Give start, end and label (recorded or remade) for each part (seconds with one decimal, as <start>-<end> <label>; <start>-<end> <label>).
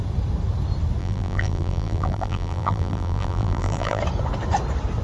0.0-1.0 recorded; 1.0-4.0 remade; 4.0-5.0 recorded